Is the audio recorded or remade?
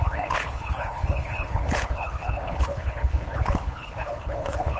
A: remade